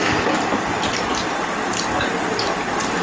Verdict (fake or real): real